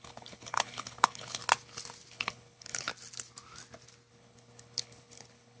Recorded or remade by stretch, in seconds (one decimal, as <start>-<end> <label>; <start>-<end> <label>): 0.0-1.4 remade; 1.4-2.1 recorded; 2.1-2.9 remade; 2.9-4.1 recorded; 4.1-5.6 remade